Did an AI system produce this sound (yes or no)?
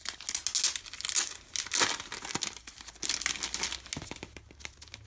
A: no